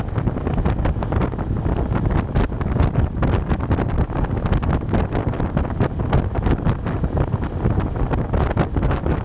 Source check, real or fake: real